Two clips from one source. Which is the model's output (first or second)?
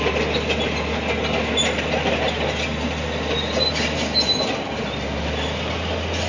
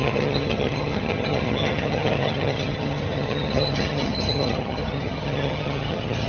second